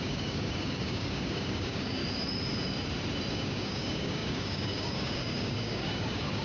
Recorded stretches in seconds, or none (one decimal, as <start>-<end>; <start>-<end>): 2.0-3.3